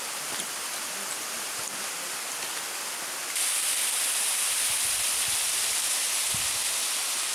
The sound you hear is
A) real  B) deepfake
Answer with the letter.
A